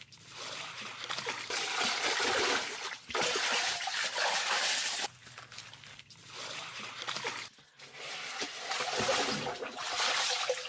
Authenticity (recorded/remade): recorded